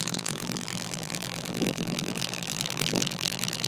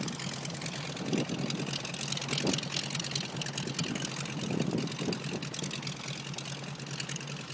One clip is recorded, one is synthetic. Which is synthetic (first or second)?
first